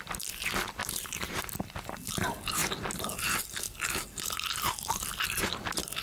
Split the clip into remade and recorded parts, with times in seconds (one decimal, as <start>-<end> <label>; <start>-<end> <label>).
0.0-0.8 recorded; 0.8-1.3 remade; 1.3-6.0 recorded